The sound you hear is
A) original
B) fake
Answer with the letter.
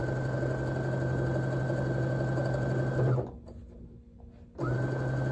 A